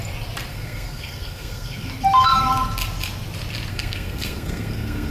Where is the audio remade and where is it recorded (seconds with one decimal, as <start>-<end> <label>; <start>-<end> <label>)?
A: 0.0-0.5 recorded; 0.5-1.9 remade; 1.9-3.7 recorded; 3.7-5.1 remade